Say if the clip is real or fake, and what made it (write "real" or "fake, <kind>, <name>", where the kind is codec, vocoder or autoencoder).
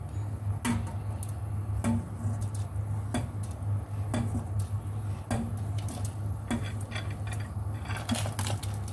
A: real